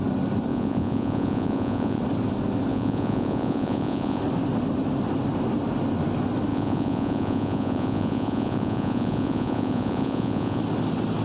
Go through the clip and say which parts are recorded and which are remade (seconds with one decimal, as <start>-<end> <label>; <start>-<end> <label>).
0.0-0.5 recorded; 0.5-2.0 remade; 2.0-2.7 recorded; 2.7-4.2 remade; 4.2-6.5 recorded; 6.5-10.6 remade; 10.6-11.2 recorded